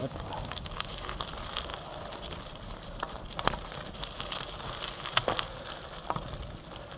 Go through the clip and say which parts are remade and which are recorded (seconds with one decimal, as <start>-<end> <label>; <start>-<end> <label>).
0.0-0.9 remade; 0.9-7.0 recorded